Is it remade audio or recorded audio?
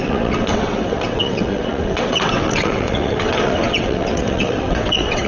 remade